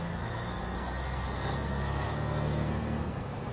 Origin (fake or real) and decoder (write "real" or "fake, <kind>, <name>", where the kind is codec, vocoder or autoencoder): fake, codec, SNAC